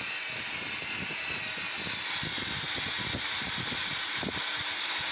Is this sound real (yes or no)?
yes